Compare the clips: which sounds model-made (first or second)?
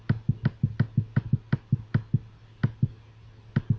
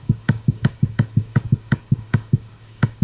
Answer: second